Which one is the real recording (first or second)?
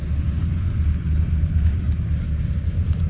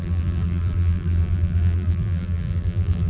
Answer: first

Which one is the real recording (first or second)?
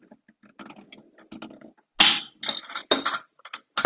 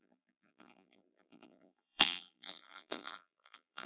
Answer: first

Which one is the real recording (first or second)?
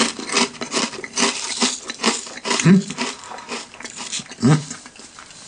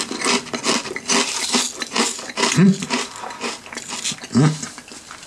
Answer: second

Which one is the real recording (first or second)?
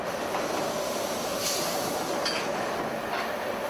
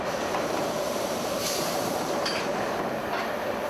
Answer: first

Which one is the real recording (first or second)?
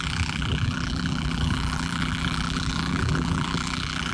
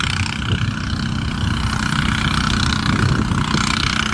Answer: second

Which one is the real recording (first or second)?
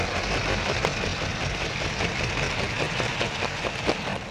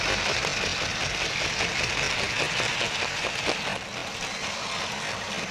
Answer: second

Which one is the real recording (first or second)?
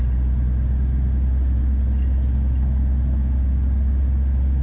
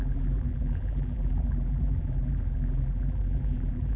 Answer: first